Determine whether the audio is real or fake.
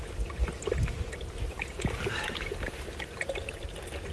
real